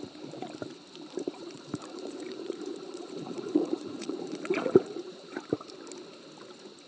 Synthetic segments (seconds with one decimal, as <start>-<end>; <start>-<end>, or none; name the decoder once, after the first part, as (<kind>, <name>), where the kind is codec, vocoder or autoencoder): 1.3-5.4 (vocoder, Vocos)